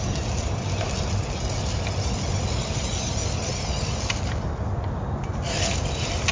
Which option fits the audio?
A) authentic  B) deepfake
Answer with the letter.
A